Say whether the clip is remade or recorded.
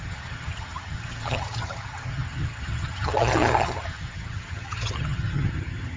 remade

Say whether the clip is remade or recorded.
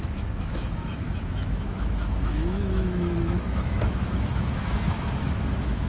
remade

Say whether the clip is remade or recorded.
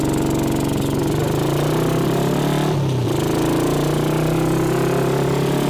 recorded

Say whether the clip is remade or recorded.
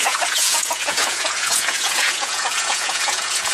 remade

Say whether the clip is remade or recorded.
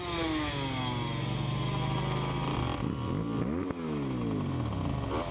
recorded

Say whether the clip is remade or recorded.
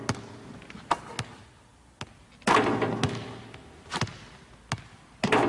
recorded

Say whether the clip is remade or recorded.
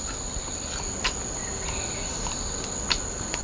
recorded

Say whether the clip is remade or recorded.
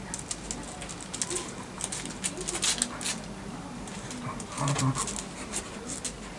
recorded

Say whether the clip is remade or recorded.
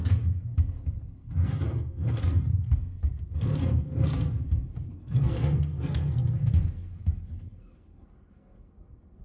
remade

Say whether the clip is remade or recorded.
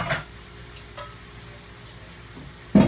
recorded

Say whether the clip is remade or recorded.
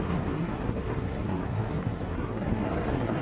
remade